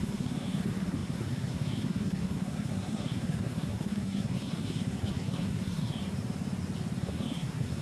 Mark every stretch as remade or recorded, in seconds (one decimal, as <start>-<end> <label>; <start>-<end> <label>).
0.0-6.0 remade; 6.0-7.0 recorded; 7.0-7.8 remade